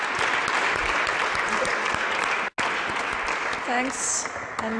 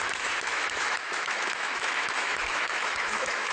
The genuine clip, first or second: first